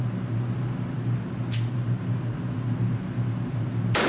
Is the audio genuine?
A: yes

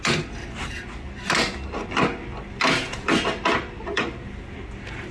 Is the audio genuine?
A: yes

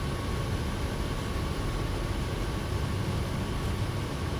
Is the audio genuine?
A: yes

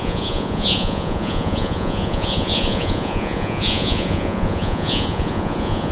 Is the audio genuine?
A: no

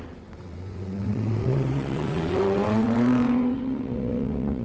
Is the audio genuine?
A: no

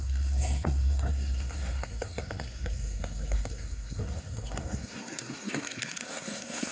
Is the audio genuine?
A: no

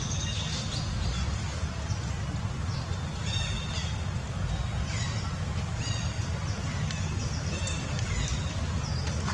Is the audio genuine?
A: yes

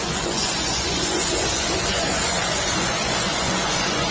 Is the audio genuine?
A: no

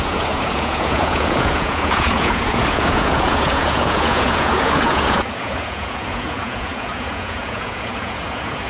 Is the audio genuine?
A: no